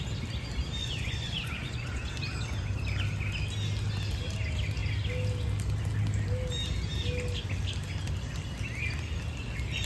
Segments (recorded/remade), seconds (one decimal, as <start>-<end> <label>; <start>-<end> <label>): 0.0-0.8 recorded; 0.8-2.1 remade; 2.1-9.9 recorded